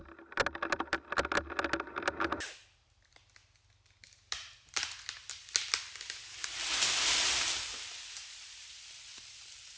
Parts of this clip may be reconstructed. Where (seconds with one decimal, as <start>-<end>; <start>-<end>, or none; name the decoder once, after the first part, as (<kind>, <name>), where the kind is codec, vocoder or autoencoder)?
none